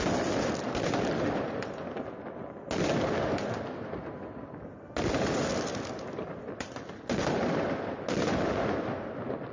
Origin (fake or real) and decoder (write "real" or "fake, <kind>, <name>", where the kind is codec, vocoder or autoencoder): real